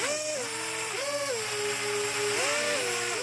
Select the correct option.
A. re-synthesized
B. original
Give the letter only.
B